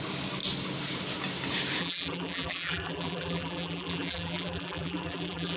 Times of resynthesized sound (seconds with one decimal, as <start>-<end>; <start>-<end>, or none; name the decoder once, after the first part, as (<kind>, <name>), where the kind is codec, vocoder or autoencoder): 1.8-5.6 (vocoder, BigVGAN v2)